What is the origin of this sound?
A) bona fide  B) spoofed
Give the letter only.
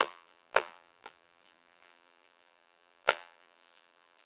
B